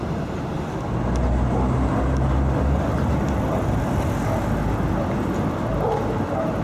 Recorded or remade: recorded